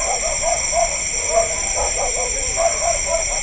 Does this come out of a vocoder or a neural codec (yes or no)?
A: no